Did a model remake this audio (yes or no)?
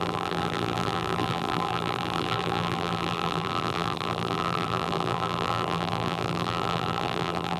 yes